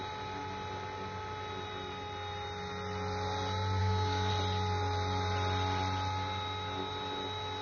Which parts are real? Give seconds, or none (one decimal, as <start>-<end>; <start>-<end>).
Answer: 0.0-3.8; 4.3-7.6